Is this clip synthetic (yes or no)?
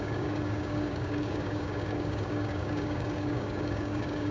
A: yes